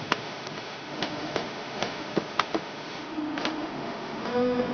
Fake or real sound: fake